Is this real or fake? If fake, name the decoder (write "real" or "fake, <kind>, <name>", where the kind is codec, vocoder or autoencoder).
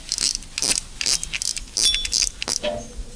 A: real